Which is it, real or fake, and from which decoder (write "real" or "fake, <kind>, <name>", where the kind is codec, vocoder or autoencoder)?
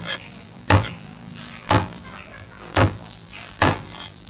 fake, vocoder, BigVGAN v2